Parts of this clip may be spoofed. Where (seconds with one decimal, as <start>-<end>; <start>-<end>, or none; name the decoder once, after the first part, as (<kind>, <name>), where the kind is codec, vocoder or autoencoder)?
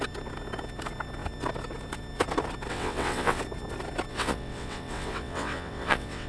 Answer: 2.7-3.4 (vocoder, WaveNeXt); 4.1-6.3